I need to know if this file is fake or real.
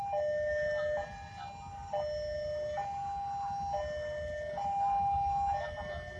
real